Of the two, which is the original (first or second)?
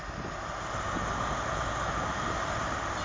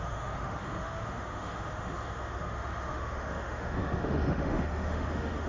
first